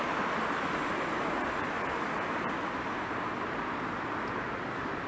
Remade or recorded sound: recorded